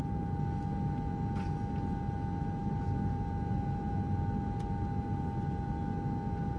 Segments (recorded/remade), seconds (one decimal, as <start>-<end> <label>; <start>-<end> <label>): 0.0-6.6 recorded

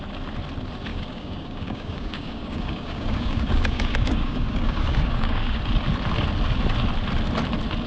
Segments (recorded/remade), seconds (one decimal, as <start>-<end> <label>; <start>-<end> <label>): 0.0-0.9 recorded; 0.9-5.6 remade; 5.6-7.9 recorded

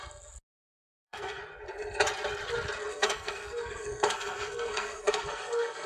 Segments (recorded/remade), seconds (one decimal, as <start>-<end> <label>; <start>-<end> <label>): 0.0-0.5 recorded; 0.5-1.4 remade; 1.4-2.9 recorded; 2.9-5.9 remade

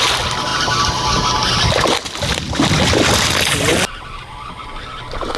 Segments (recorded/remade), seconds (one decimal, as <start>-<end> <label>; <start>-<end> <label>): 0.0-3.7 recorded; 3.7-4.3 remade; 4.3-5.4 recorded

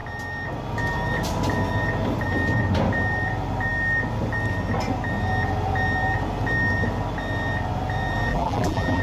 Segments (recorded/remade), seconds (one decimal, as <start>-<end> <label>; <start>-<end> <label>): 0.0-8.3 recorded; 8.3-9.0 remade

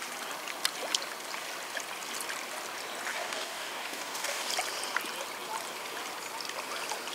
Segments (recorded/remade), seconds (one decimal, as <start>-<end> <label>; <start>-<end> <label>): 0.0-3.1 recorded; 3.1-4.5 remade; 4.5-7.1 recorded

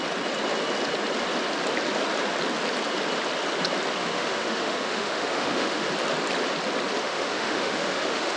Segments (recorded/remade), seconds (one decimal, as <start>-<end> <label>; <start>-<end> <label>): 0.0-4.0 recorded; 4.0-5.9 remade; 5.9-7.0 recorded; 7.0-8.4 remade

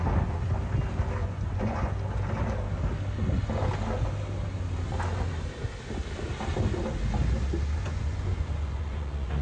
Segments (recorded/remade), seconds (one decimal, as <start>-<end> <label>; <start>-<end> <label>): 0.0-1.2 recorded; 1.2-1.9 remade; 1.9-7.8 recorded; 7.8-9.4 remade